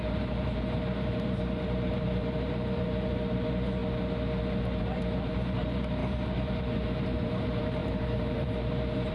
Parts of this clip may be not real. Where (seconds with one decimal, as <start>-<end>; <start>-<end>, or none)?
0.0-3.8; 4.8-9.1